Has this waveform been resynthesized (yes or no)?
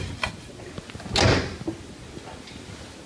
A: no